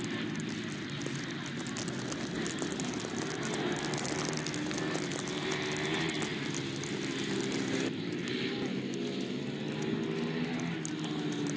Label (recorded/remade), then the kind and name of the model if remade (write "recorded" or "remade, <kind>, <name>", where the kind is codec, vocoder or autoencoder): recorded